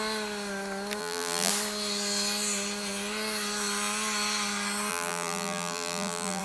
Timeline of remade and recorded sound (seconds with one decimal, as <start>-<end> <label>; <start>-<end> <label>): 0.0-1.0 recorded; 1.0-1.5 remade; 1.5-4.9 recorded; 4.9-6.4 remade